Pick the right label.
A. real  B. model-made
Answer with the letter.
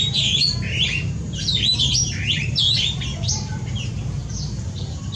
B